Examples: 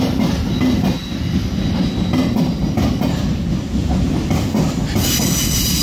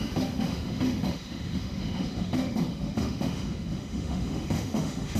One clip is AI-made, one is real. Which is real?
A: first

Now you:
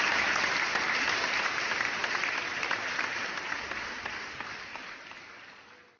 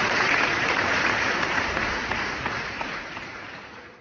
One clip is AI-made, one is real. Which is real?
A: first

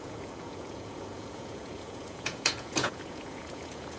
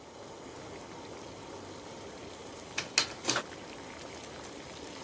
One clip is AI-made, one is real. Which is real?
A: second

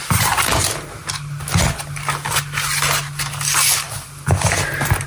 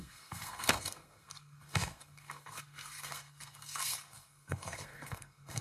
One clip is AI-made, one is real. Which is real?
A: first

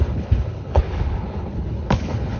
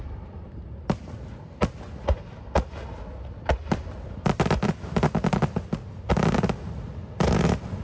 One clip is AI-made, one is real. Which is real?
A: second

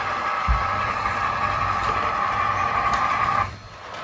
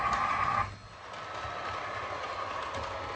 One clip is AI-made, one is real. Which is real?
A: second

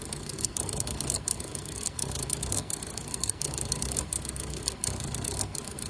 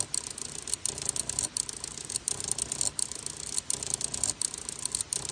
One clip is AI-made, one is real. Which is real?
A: second